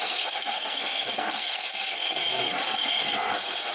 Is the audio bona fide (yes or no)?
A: no